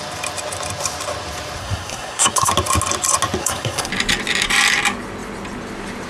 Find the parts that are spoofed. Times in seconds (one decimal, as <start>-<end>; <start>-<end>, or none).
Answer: 1.6-2.5; 3.4-3.9